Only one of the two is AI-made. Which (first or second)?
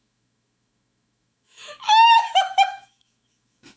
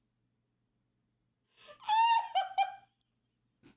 first